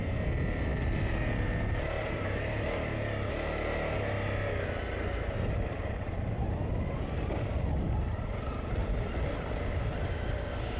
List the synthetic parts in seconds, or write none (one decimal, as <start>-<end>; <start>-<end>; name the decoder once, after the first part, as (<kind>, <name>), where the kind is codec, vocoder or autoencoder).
none